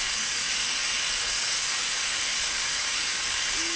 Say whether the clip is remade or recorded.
remade